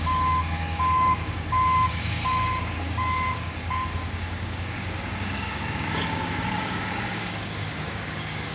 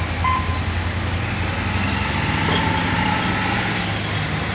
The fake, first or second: first